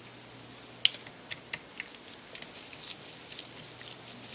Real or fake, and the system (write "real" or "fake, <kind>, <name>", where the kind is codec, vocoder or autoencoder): real